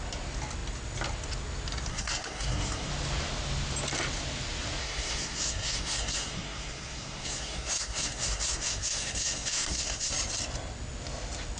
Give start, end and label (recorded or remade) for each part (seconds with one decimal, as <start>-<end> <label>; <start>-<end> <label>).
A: 0.0-1.9 recorded; 1.9-2.9 remade; 2.9-4.8 recorded; 4.8-10.1 remade; 10.1-11.6 recorded